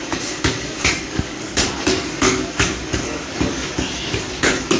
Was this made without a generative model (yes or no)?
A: no